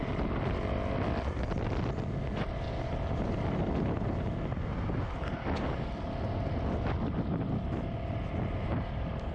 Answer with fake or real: real